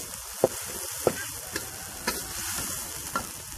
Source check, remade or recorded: recorded